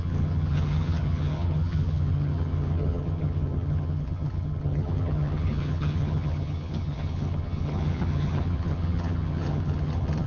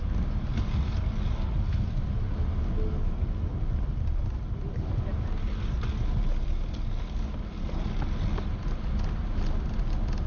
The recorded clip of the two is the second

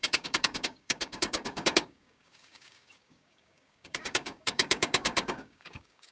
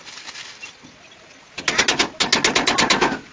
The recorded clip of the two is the second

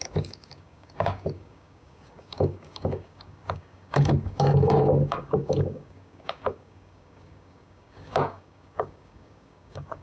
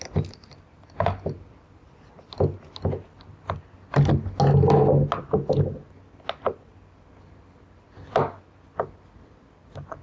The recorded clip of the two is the second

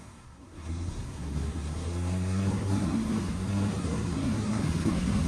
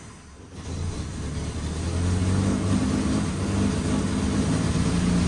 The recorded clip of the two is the second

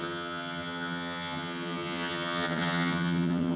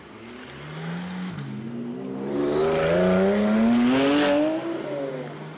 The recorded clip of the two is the second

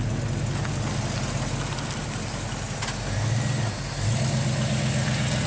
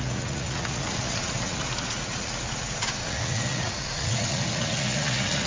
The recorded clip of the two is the first